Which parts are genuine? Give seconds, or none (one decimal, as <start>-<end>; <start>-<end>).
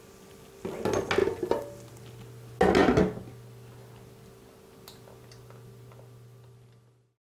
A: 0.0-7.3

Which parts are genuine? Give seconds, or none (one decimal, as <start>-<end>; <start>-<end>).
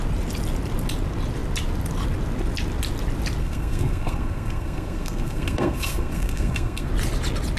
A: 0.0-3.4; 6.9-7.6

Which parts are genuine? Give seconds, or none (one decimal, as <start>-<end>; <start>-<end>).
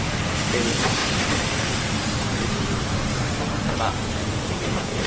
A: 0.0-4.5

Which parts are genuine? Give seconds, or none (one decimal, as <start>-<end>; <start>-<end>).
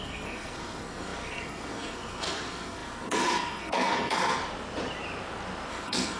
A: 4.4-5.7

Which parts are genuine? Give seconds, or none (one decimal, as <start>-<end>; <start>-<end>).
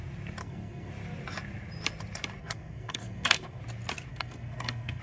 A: 0.0-0.4; 0.9-2.4; 3.6-4.1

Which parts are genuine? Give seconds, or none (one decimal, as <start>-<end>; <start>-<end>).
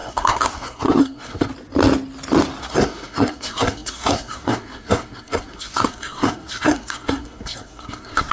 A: 1.5-2.6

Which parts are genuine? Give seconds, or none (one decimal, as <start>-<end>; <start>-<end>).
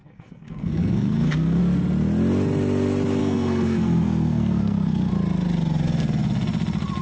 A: 1.6-3.2; 5.1-7.0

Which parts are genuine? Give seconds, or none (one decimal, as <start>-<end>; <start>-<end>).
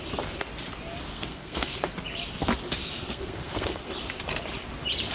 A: 0.0-1.1; 1.9-2.8; 3.9-5.1